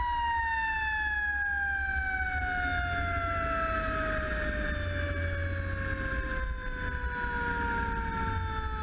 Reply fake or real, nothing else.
real